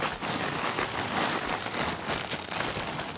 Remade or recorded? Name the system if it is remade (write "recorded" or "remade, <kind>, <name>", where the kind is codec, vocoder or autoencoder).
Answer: recorded